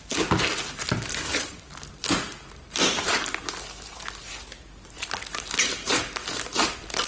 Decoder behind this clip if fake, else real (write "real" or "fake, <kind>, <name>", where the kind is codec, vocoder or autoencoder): real